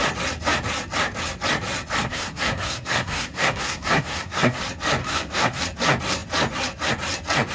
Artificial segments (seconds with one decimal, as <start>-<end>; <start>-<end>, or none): 2.0-4.6; 5.0-5.6